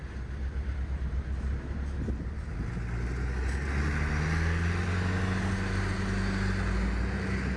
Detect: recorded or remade recorded